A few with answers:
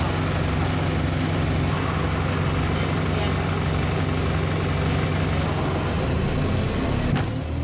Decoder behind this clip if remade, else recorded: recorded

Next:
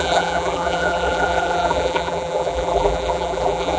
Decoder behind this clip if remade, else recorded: remade, vocoder, BigVGAN v2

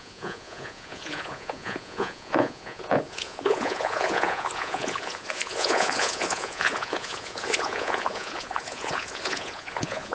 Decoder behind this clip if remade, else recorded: remade, vocoder, Vocos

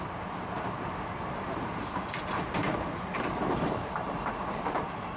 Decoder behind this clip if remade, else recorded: remade, vocoder, BigVGAN v2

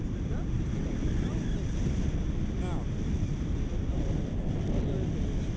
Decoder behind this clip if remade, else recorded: recorded